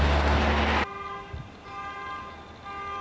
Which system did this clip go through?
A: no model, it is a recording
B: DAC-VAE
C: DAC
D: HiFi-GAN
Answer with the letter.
A